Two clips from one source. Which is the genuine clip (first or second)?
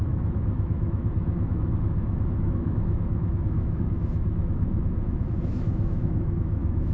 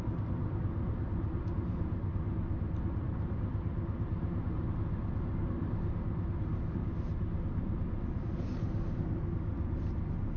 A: second